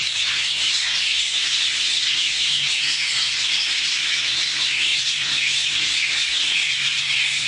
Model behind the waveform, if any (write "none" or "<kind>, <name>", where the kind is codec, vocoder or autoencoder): codec, SNAC